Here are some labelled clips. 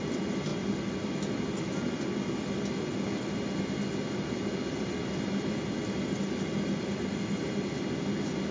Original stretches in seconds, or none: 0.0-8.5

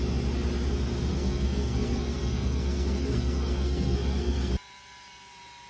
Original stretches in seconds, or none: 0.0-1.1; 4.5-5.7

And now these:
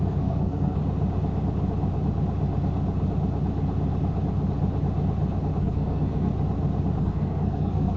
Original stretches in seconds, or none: 0.8-5.6; 6.3-7.0

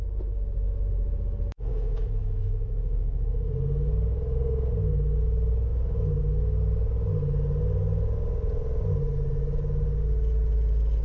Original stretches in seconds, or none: 0.0-1.7; 3.5-5.7; 6.2-11.0

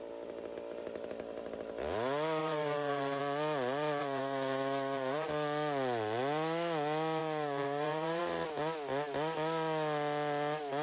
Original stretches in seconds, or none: 0.0-2.4; 3.2-4.0; 5.3-7.2; 8.2-10.8